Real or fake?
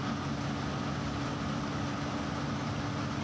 real